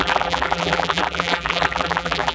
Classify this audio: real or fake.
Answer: fake